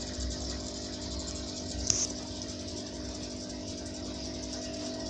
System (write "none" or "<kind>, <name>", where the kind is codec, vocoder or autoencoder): none